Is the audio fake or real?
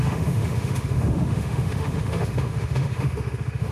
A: fake